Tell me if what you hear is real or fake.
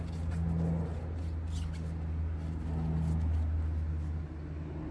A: real